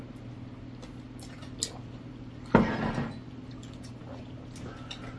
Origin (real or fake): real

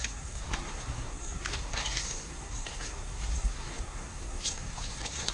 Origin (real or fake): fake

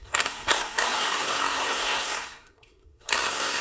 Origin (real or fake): fake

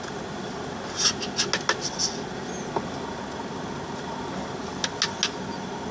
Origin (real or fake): real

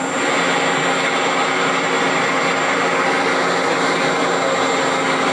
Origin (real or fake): real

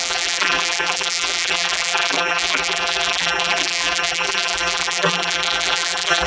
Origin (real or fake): fake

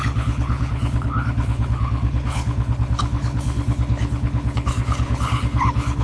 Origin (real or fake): fake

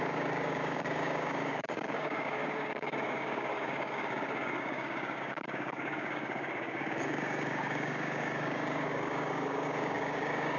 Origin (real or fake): fake